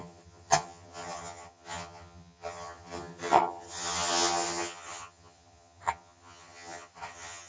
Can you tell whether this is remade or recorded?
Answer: remade